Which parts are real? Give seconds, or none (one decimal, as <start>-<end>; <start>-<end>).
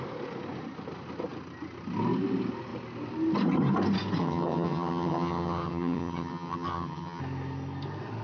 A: 0.0-4.2; 7.2-8.2